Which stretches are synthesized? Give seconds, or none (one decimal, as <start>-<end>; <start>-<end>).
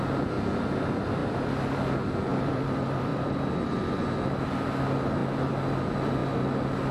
2.3-4.0